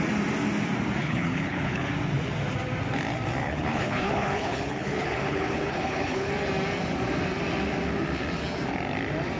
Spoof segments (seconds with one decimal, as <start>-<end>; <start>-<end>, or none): 1.0-1.9; 3.4-6.3